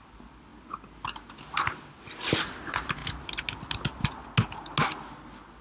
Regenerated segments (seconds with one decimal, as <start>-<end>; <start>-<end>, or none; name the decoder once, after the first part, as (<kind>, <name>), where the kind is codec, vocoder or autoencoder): none